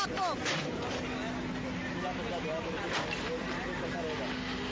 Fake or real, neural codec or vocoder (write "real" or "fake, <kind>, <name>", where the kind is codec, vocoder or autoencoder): real